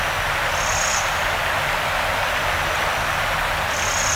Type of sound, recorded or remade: recorded